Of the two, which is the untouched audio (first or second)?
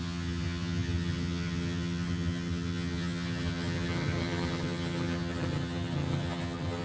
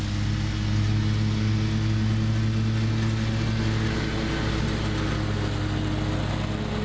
second